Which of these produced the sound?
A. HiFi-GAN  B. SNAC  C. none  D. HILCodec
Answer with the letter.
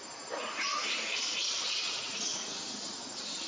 C